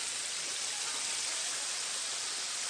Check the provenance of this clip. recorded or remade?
recorded